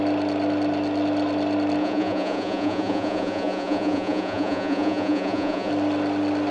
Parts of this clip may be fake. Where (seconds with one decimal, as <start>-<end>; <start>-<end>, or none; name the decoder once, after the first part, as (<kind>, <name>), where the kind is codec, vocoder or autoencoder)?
1.8-5.7 (vocoder, Vocos)